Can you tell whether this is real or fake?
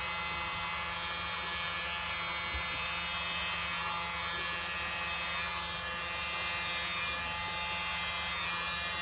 real